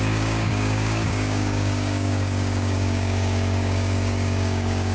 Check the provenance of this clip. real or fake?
fake